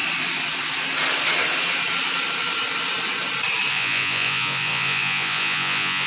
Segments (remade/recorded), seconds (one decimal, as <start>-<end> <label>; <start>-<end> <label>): 0.0-3.7 recorded; 3.7-6.1 remade